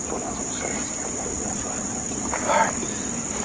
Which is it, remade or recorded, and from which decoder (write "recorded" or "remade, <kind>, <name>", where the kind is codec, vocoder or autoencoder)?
recorded